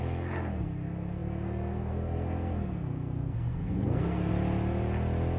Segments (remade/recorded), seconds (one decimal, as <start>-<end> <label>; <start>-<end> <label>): 0.0-4.3 remade; 4.3-5.4 recorded